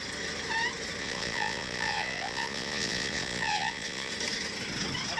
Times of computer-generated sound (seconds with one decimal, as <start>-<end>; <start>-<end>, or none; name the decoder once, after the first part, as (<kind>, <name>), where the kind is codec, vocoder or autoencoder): 1.0-4.1 (vocoder, Vocos)